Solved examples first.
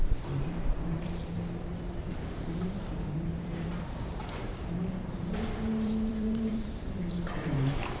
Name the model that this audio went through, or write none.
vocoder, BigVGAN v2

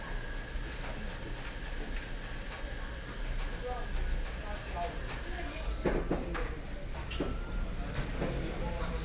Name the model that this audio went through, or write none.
none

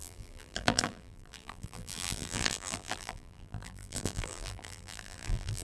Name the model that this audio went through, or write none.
vocoder, BigVGAN v2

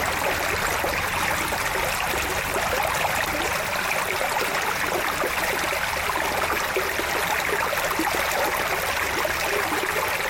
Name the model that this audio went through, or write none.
none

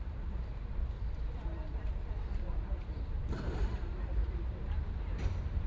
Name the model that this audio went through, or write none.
vocoder, BigVGAN v2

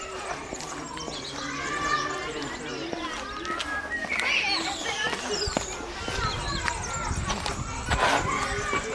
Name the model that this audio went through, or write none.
none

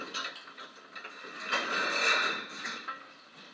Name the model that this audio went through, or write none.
none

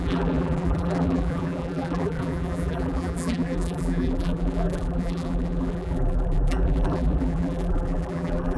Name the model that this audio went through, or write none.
vocoder, BigVGAN v2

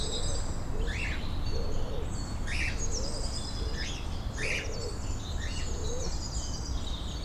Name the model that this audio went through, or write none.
none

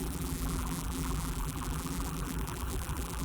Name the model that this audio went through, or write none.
vocoder, BigVGAN v2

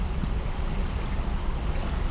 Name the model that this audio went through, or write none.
none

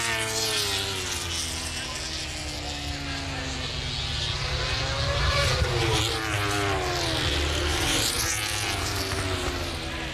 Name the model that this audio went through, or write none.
none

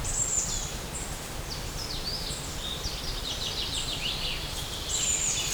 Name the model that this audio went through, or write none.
vocoder, BigVGAN v2